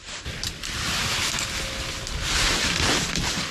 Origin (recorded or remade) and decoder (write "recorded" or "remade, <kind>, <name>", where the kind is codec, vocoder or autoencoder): recorded